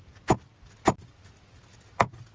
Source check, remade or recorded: recorded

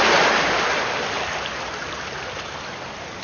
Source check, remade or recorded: recorded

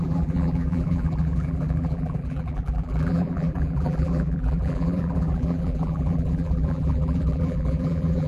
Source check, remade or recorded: remade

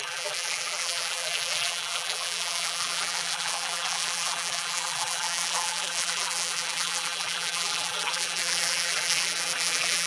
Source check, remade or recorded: remade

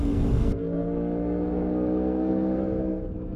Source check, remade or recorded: remade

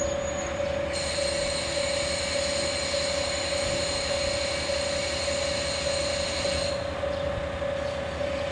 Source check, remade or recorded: recorded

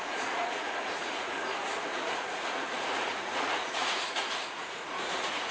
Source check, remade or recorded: remade